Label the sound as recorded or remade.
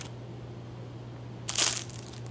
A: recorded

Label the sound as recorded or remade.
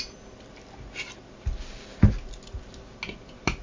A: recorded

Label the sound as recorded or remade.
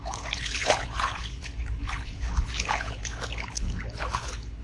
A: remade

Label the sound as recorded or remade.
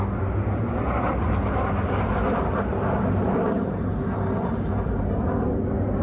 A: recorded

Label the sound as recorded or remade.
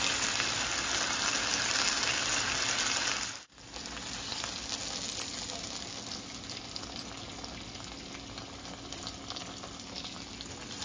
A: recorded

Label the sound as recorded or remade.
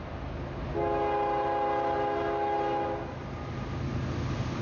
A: recorded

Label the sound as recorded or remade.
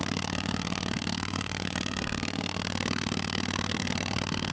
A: remade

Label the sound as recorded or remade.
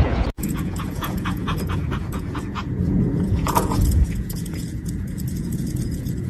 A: remade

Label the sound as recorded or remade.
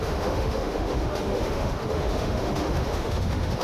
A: remade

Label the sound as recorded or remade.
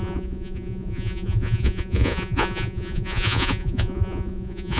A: remade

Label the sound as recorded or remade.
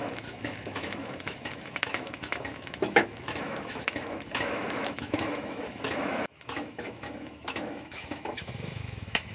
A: remade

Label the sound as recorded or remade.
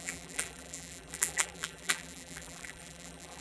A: remade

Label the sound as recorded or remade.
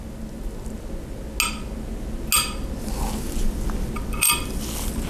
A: recorded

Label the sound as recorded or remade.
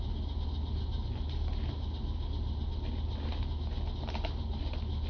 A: recorded